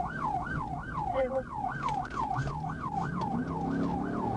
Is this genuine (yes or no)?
yes